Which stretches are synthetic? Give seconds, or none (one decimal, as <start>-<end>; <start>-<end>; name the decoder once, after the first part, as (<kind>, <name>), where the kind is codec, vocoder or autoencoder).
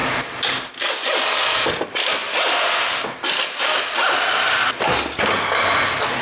none